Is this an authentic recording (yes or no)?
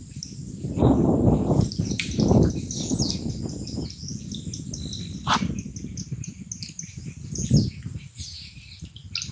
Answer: yes